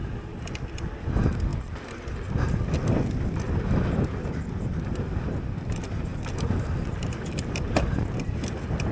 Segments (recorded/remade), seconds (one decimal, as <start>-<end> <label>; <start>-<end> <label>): 0.0-8.9 recorded